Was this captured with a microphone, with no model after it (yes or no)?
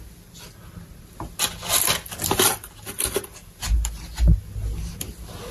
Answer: yes